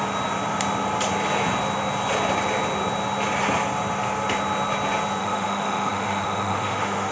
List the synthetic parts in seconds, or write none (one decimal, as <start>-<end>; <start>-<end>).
5.2-7.1